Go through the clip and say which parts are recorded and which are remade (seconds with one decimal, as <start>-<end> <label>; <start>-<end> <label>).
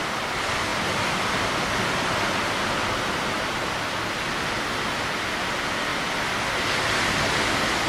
0.0-7.9 recorded